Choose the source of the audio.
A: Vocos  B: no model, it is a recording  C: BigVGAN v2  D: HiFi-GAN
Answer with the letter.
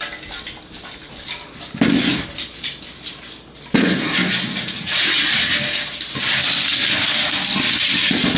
B